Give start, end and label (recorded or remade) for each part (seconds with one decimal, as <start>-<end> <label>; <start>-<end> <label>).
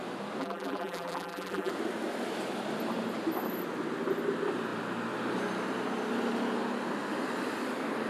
0.0-0.4 recorded; 0.4-1.7 remade; 1.7-8.1 recorded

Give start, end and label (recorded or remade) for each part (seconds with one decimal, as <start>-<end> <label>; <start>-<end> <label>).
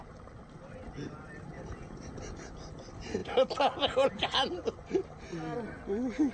0.0-6.3 recorded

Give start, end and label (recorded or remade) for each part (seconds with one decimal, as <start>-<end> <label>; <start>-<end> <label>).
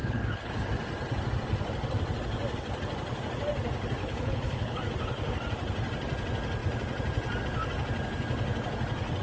0.0-0.7 remade; 0.7-4.0 recorded; 4.0-4.8 remade; 4.8-9.2 recorded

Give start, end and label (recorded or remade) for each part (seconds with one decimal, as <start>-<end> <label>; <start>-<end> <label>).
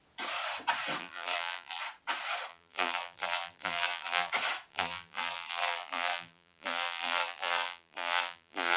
0.0-1.0 recorded; 1.0-1.8 remade; 1.8-2.5 recorded; 2.5-4.3 remade; 4.3-4.7 recorded; 4.7-8.8 remade